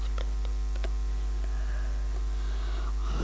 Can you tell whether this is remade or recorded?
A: recorded